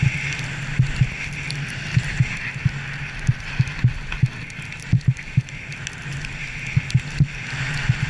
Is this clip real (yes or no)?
yes